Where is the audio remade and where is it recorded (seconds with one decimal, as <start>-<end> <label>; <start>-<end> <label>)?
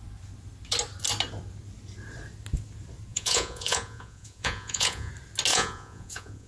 0.0-3.1 recorded; 3.1-5.1 remade; 5.1-5.5 recorded; 5.5-6.5 remade